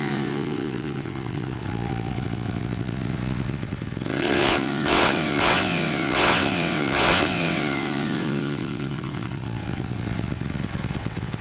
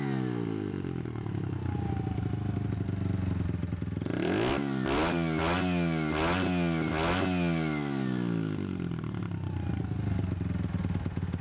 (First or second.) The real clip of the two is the second